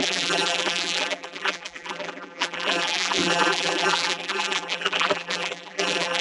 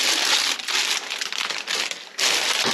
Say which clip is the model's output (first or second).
first